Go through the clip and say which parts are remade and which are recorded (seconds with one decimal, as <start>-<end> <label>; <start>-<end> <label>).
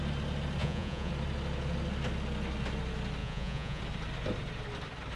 0.0-0.6 recorded; 0.6-1.1 remade; 1.1-3.2 recorded; 3.2-3.8 remade; 3.8-5.2 recorded